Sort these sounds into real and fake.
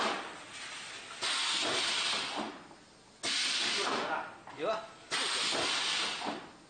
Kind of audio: real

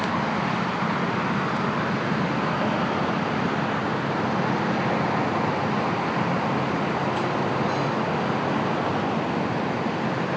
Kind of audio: real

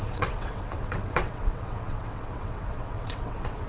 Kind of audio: fake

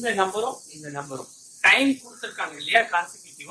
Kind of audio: fake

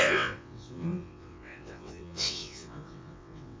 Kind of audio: fake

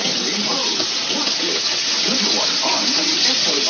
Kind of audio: fake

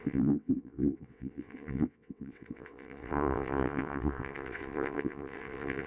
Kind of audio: fake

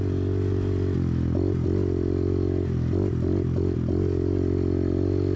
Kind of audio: real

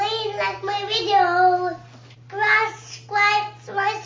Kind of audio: real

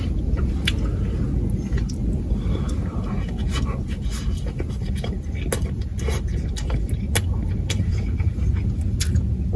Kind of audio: real